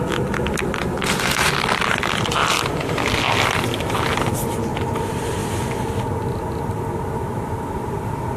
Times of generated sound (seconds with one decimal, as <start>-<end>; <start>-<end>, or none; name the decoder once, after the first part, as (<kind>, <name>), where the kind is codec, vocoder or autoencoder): 2.4-2.9 (vocoder, BigVGAN v2); 5.4-8.4